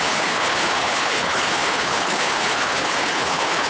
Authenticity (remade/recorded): remade